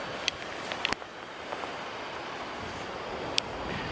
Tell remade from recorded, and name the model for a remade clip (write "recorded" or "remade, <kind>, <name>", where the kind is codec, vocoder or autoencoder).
recorded